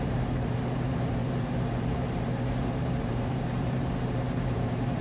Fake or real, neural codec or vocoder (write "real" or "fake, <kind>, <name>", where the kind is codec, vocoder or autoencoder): fake, vocoder, BigVGAN v2